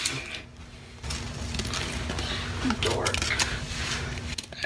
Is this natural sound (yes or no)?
yes